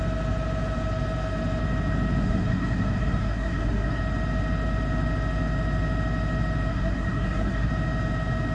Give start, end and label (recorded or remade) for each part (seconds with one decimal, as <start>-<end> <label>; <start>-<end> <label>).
0.0-2.2 recorded; 2.2-4.0 remade; 4.0-6.7 recorded; 6.7-7.7 remade; 7.7-8.5 recorded